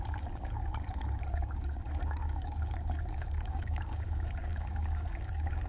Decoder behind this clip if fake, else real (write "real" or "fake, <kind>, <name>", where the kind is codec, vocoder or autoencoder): fake, codec, DAC